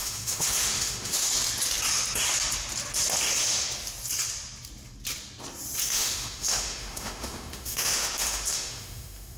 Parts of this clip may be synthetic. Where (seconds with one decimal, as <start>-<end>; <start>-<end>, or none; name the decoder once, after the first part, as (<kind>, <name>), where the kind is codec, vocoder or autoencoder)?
0.0-1.3 (autoencoder, DAC-VAE); 5.8-9.4

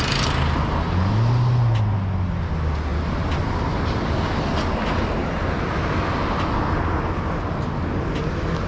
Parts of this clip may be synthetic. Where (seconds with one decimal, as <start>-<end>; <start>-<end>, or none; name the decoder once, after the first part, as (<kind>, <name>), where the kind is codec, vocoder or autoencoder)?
none

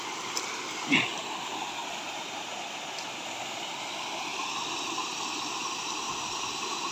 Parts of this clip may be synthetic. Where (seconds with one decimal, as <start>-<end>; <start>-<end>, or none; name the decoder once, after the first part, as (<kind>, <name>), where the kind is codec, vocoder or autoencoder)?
none

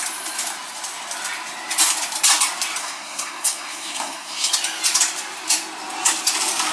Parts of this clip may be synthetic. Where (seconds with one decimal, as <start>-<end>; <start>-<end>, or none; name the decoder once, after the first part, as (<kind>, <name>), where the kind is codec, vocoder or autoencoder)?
2.8-4.5 (codec, SNAC)